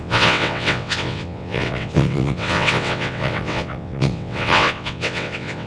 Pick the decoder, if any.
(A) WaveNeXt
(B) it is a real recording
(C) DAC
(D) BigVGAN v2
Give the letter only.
A